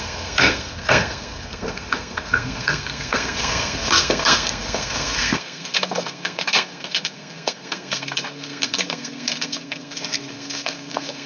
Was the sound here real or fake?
fake